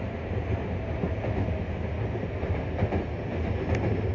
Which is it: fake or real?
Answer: real